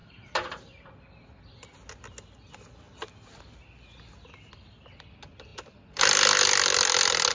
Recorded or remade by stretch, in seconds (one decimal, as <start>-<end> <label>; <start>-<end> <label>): 0.0-0.9 remade; 0.9-7.3 recorded